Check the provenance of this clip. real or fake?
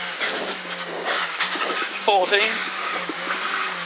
fake